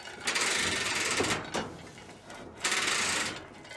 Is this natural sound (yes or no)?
yes